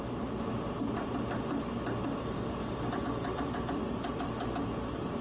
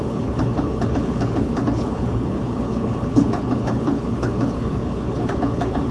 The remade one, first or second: second